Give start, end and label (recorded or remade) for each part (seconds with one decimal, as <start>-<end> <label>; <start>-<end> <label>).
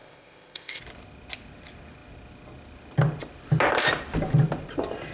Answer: 0.0-0.8 remade; 0.8-5.1 recorded